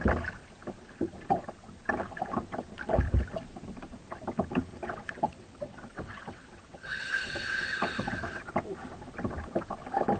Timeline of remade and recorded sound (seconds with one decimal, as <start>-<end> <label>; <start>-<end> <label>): 0.0-4.7 recorded; 4.7-8.5 remade; 8.5-10.2 recorded